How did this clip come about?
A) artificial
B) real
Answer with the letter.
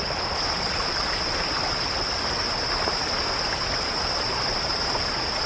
B